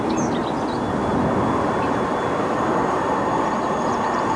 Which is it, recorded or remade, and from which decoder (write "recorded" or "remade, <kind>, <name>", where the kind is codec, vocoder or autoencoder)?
recorded